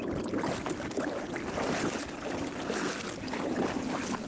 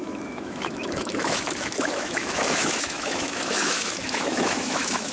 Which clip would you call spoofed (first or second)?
second